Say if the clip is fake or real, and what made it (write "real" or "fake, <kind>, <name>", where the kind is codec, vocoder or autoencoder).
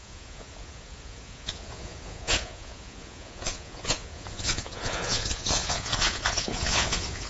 fake, vocoder, Vocos